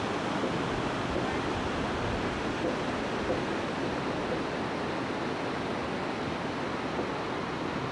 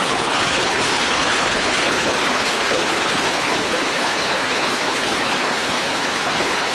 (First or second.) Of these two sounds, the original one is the first